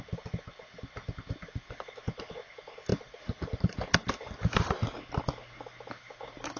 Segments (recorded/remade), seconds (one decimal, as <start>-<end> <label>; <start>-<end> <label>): 0.0-6.6 recorded